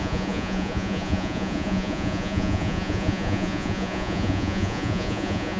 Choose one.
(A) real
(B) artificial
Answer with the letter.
B